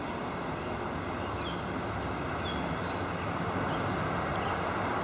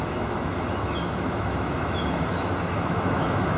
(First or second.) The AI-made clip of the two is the second